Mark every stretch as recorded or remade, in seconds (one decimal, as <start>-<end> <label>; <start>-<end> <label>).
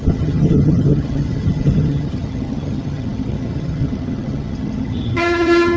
0.0-5.8 remade